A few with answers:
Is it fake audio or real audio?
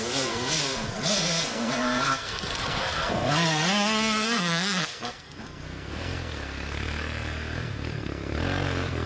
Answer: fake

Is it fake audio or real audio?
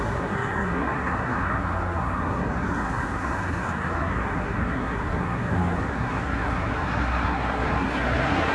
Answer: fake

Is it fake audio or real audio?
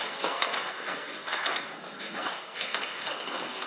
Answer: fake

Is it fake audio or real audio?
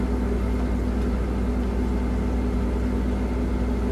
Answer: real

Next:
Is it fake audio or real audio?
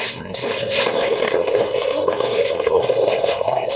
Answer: fake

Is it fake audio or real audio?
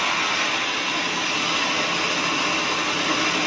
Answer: real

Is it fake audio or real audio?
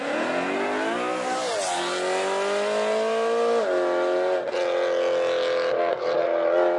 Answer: real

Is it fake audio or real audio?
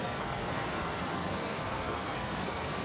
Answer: fake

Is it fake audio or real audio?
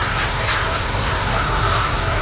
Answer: fake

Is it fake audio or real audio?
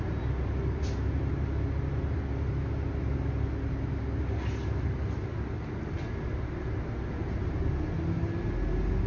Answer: real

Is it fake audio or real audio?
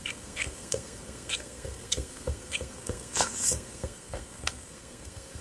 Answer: fake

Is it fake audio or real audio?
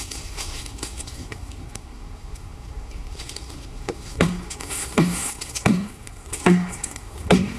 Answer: fake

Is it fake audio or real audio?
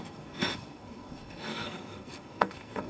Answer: fake